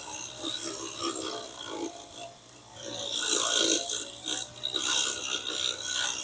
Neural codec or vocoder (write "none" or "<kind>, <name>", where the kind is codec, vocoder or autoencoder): vocoder, BigVGAN v2